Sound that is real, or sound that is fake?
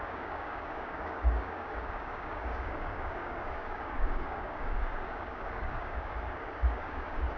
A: fake